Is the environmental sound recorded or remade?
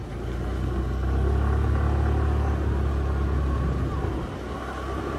recorded